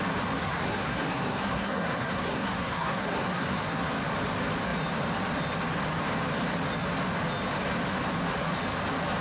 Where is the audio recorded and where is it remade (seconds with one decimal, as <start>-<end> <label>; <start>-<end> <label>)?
0.0-0.4 recorded; 0.4-3.9 remade; 3.9-9.2 recorded